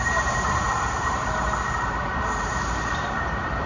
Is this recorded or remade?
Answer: remade